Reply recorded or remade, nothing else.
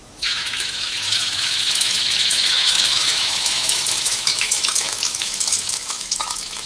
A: remade